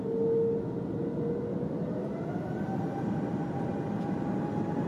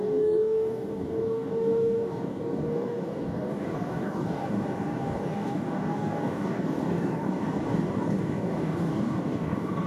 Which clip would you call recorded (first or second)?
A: first